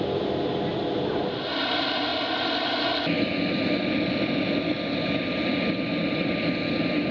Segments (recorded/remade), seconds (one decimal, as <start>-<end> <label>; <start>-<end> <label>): 0.0-7.1 recorded